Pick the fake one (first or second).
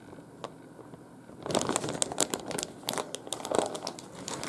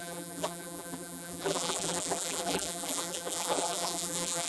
second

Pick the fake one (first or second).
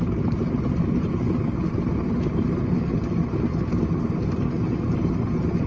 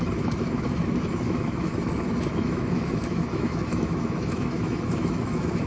second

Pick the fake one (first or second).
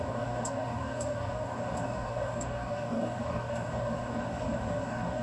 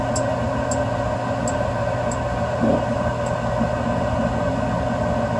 first